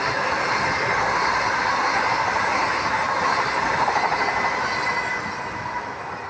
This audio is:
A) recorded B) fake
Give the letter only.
A